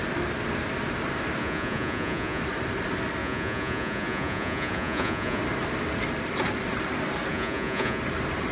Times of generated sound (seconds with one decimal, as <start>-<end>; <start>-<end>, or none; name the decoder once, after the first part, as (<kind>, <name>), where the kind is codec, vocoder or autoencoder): 1.4-2.4 (vocoder, Vocos); 3.2-5.4; 7.3-8.0